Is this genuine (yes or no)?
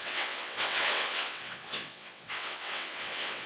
no